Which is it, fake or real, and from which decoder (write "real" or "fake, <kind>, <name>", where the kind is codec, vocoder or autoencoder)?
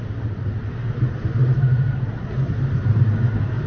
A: real